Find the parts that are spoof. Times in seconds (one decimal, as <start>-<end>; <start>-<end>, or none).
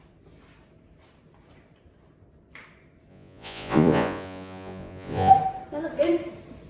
3.1-5.3